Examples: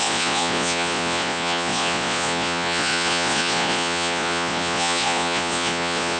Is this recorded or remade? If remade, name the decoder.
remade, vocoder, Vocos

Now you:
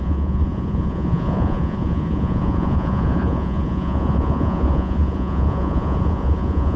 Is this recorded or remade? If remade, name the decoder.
remade, vocoder, Vocos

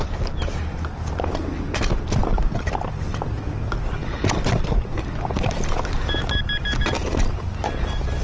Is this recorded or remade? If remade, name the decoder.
recorded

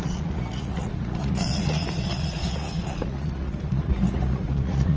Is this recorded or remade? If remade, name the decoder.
remade, vocoder, Vocos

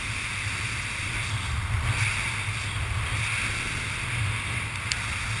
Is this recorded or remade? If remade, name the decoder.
recorded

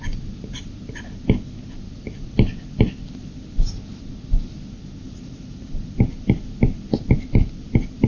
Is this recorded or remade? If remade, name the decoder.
recorded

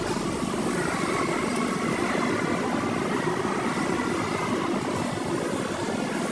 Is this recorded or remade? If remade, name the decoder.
recorded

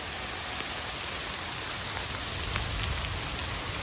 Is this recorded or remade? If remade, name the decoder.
recorded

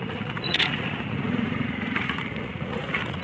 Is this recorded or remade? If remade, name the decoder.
remade, vocoder, Vocos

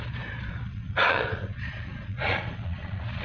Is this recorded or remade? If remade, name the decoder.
remade, vocoder, Vocos